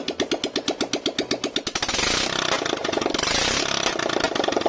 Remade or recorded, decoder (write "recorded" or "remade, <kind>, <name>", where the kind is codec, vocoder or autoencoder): recorded